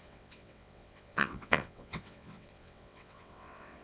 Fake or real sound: fake